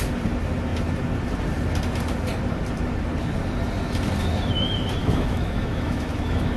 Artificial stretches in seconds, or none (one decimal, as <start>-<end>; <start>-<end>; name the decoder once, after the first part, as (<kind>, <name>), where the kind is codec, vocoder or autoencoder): 5.0-6.6 (autoencoder, DAC-VAE)